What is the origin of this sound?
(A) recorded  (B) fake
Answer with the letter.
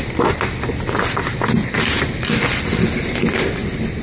A